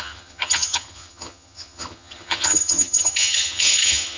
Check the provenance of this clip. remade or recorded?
remade